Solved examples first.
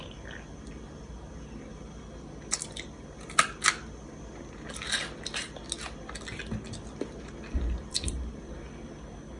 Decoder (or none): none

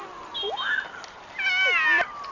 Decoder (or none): none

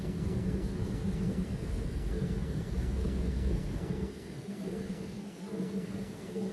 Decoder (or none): codec, SNAC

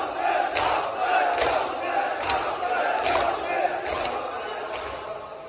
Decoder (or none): none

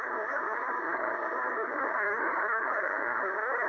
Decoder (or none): codec, SNAC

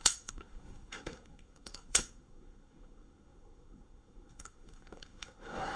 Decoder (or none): codec, SNAC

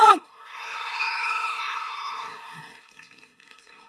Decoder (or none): codec, SNAC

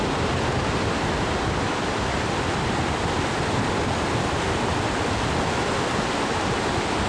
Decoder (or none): none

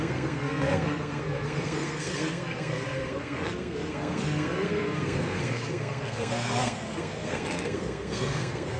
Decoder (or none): codec, SNAC